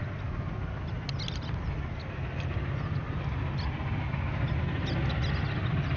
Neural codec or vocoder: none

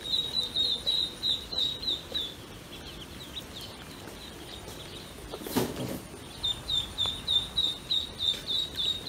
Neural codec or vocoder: vocoder, BigVGAN v2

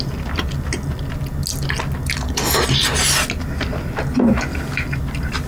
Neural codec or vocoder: none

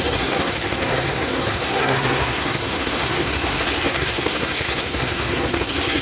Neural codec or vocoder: codec, SNAC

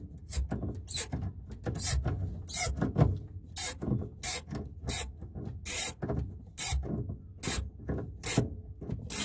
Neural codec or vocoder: none